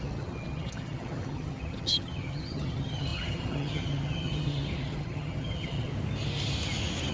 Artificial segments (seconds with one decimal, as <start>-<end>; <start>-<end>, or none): 0.0-5.9